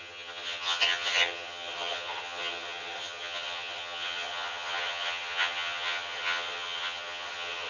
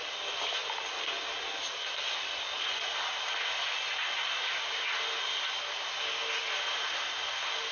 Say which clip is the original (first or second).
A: second